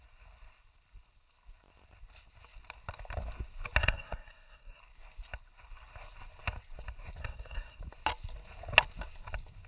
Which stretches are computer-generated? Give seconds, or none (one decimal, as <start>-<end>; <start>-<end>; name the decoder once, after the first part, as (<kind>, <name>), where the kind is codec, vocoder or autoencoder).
3.8-4.8 (codec, SNAC); 7.2-7.8